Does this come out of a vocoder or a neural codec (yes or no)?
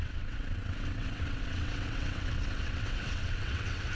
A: yes